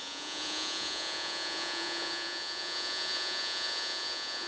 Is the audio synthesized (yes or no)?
yes